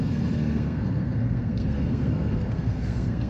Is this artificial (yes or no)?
yes